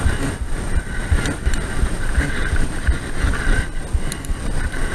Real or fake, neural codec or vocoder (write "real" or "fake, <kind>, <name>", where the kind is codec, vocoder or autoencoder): real